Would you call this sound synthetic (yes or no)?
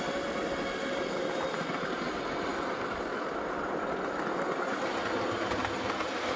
no